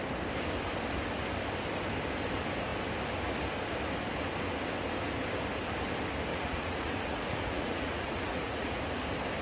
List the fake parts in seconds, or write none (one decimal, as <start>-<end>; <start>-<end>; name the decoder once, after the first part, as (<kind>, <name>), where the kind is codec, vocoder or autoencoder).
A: 6.3-8.8 (vocoder, Vocos)